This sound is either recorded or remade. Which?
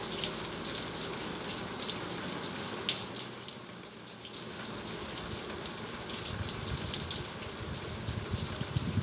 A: recorded